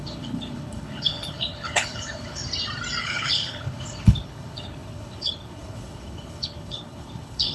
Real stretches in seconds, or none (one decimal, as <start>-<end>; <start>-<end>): 2.4-3.0